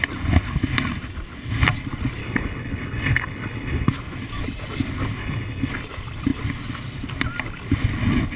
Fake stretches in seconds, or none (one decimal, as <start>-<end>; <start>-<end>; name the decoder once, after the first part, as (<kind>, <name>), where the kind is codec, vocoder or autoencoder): 2.2-3.9 (codec, HILCodec); 5.2-5.7